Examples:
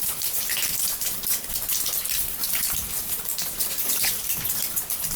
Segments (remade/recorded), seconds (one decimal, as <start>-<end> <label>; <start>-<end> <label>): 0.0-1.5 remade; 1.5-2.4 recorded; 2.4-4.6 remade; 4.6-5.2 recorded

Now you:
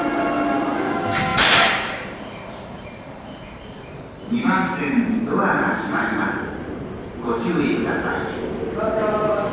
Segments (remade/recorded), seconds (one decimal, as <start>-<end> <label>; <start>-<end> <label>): 0.0-1.3 recorded; 1.3-4.0 remade; 4.0-4.8 recorded; 4.8-8.3 remade; 8.3-9.5 recorded

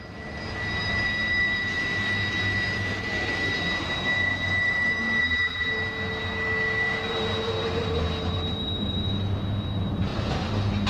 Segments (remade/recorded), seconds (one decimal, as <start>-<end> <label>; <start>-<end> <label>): 0.0-5.2 recorded; 5.2-5.7 remade; 5.7-10.9 recorded

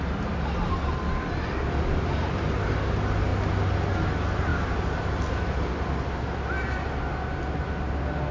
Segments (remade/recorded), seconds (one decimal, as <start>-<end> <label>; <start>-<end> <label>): 0.0-8.3 recorded

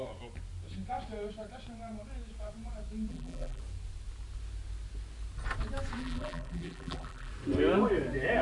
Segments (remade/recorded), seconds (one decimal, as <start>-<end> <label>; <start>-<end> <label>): 0.0-3.1 recorded; 3.1-3.6 remade; 3.6-6.0 recorded; 6.0-7.3 remade; 7.3-8.4 recorded

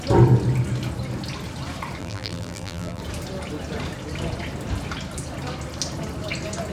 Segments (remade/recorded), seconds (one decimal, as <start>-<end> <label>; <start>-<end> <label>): 0.0-2.0 recorded; 2.0-3.0 remade; 3.0-6.7 recorded

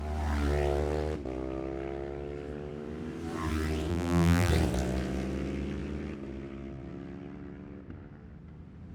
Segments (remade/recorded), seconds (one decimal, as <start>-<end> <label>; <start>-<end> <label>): 0.0-3.9 recorded; 3.9-4.5 remade; 4.5-8.9 recorded